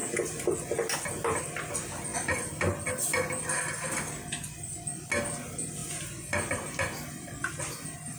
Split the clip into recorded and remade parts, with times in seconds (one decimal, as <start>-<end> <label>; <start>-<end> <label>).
0.0-8.2 recorded